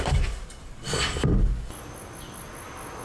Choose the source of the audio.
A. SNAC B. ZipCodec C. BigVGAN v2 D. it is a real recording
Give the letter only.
D